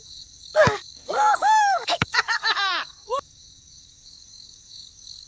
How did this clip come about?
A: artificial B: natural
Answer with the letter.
A